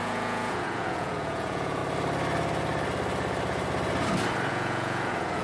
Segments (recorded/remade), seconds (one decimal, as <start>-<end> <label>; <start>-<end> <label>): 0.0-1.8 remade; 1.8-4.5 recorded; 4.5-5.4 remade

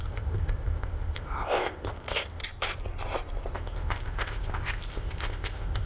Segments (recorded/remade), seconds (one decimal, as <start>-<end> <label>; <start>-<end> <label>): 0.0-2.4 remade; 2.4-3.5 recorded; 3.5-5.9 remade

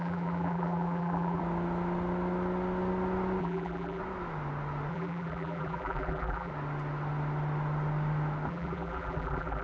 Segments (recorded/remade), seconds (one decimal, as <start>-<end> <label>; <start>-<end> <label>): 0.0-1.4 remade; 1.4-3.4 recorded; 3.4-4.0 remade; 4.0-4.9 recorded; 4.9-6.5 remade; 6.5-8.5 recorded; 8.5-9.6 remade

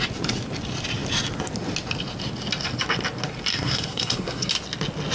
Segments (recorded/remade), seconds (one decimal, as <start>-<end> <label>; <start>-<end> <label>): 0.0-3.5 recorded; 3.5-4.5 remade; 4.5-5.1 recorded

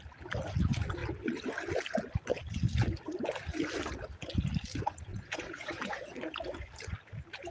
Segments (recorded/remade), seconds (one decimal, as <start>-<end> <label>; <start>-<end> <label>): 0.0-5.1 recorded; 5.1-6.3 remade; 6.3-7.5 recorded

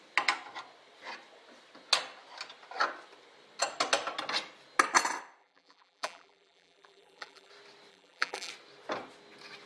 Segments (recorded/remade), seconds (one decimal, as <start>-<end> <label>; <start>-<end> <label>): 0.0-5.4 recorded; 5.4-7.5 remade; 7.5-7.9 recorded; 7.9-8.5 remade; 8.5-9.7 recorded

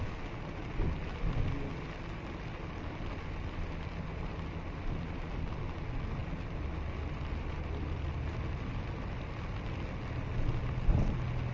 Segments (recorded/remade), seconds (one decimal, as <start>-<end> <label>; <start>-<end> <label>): 0.0-11.5 recorded